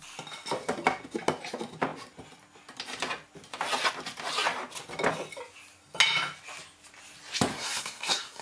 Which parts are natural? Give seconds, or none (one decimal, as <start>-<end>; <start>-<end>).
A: 0.0-7.5